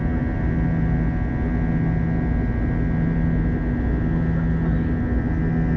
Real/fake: real